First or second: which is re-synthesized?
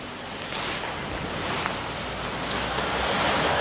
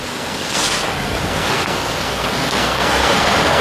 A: second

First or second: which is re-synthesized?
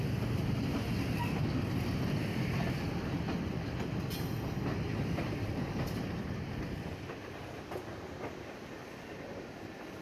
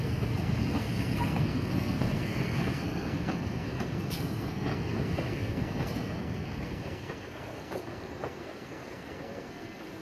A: second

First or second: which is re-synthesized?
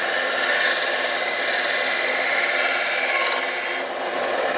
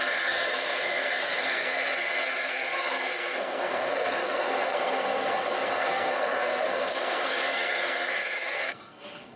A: second